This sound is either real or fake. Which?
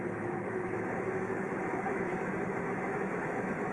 fake